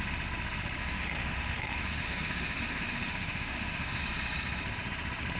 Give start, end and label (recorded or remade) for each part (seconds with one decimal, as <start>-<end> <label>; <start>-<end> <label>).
0.0-0.8 recorded; 0.8-4.0 remade; 4.0-5.4 recorded